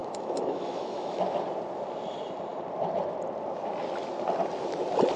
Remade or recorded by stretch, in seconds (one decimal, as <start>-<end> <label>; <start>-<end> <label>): 0.0-1.2 remade; 1.2-5.2 recorded